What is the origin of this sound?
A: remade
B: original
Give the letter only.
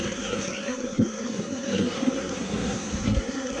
A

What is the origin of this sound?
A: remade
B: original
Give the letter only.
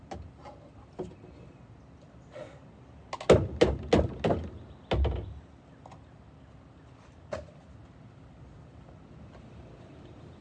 B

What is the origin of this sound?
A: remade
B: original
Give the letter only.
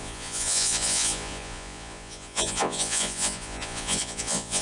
A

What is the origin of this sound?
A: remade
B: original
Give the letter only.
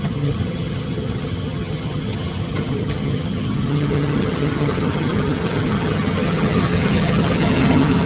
A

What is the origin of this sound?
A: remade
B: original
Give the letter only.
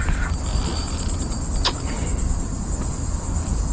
B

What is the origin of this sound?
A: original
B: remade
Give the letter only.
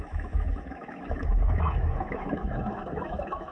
B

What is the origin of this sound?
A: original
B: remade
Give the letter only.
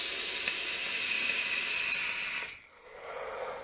A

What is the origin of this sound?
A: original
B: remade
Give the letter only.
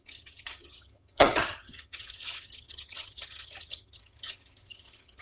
B